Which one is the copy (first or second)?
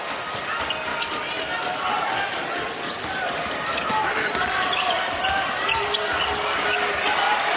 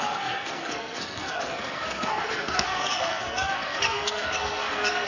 second